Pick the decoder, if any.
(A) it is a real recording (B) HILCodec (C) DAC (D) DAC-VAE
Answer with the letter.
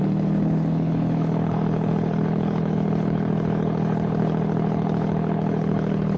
B